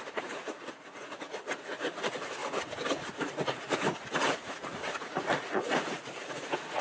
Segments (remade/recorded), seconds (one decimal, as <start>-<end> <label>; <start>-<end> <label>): 0.0-2.4 remade; 2.4-2.9 recorded; 2.9-6.8 remade